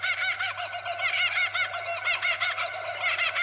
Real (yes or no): yes